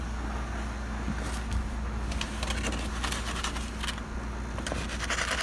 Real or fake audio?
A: real